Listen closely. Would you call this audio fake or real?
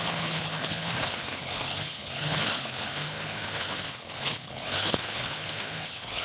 fake